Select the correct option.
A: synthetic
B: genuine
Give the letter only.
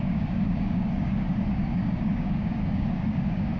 A